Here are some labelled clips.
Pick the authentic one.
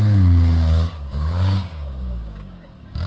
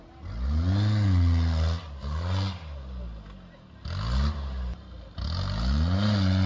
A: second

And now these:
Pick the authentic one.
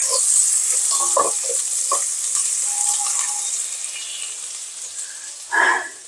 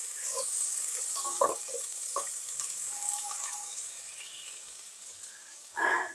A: first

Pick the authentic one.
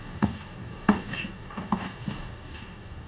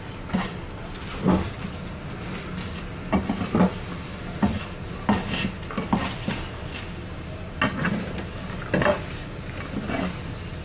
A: second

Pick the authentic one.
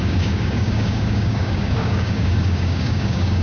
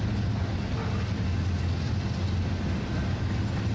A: second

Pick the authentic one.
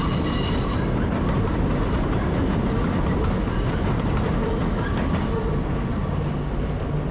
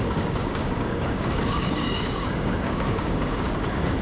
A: first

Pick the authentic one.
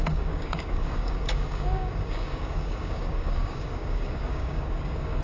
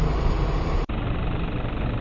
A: second